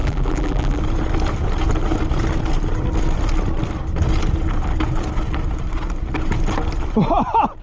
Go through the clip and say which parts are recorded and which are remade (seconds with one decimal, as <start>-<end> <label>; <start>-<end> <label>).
0.0-0.8 remade; 0.8-7.6 recorded